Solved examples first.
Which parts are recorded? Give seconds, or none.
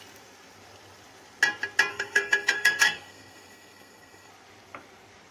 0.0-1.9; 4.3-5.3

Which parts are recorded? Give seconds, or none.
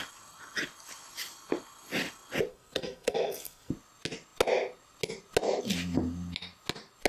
0.0-2.5; 3.7-7.1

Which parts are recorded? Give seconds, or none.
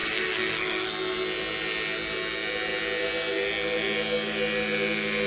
0.9-5.3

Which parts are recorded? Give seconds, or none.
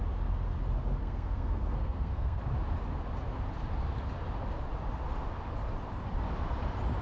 0.0-1.0; 2.4-7.0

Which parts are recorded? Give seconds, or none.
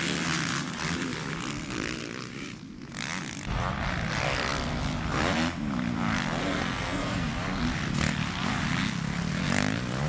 0.0-6.4; 7.3-10.1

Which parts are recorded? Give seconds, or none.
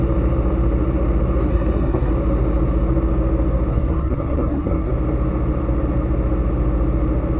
0.0-1.5; 2.1-3.7; 4.9-7.4